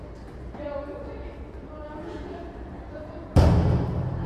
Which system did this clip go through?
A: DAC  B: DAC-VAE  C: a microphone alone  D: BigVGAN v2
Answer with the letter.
D